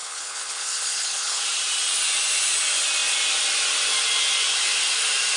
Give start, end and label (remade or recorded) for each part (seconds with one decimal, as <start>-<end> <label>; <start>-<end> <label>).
0.0-1.4 remade; 1.4-5.4 recorded